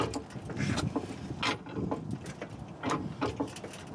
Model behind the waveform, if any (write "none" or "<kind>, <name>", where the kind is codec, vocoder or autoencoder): none